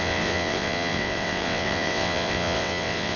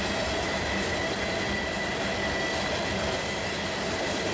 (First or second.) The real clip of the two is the second